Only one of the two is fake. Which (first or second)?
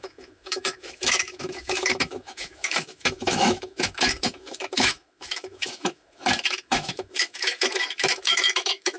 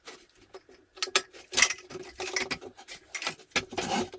first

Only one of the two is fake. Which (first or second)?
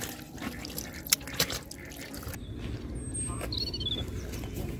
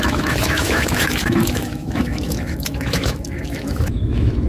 second